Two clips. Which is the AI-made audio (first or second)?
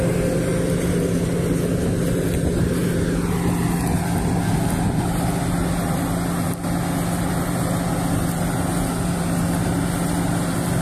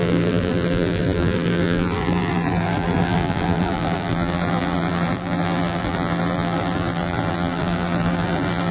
second